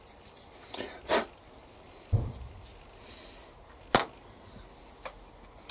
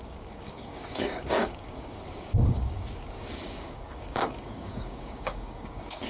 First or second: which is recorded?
first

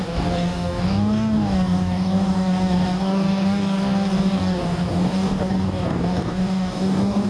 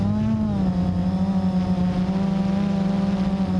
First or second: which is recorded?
second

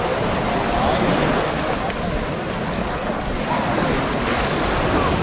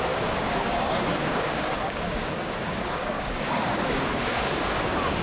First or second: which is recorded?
first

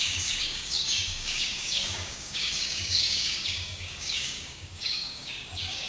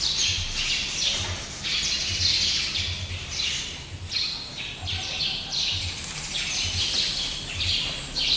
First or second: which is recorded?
second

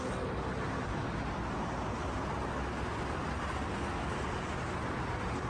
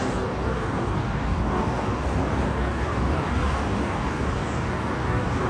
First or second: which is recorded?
first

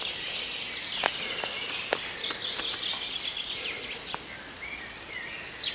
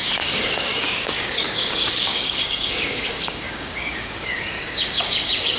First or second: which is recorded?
first